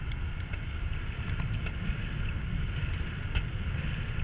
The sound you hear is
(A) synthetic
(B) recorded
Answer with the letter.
B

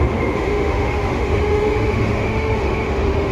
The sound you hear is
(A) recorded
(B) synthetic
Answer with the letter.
B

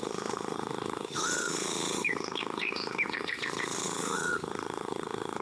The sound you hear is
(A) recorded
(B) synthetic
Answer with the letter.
B